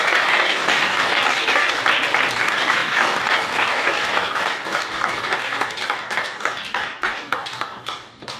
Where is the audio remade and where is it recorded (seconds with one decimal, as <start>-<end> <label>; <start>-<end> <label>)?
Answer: 0.0-1.8 remade; 1.8-2.3 recorded; 2.3-8.4 remade